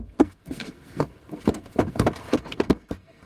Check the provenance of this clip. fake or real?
fake